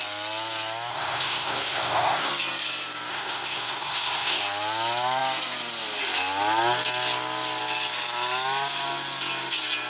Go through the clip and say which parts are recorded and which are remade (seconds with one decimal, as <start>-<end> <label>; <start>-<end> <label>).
0.0-0.9 recorded; 0.9-2.3 remade; 2.3-3.1 recorded; 3.1-4.4 remade; 4.4-9.9 recorded